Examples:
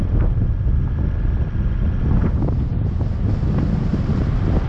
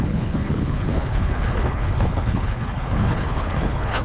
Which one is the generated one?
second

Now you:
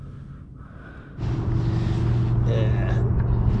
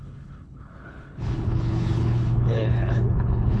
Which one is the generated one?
second